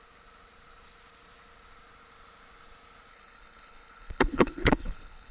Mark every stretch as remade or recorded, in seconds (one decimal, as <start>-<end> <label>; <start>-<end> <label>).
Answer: 0.0-3.1 recorded; 3.1-5.3 remade